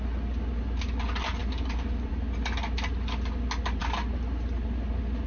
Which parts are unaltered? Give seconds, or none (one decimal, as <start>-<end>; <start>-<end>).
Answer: 0.0-5.3